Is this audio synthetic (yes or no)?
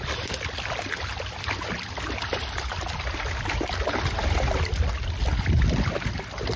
no